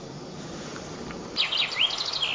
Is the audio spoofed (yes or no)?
no